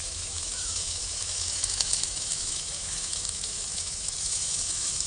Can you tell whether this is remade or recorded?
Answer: remade